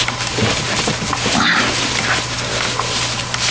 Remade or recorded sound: recorded